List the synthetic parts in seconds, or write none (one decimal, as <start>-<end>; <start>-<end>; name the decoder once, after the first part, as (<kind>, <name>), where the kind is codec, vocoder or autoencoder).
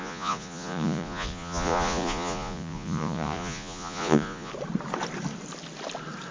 0.0-4.5 (vocoder, Vocos)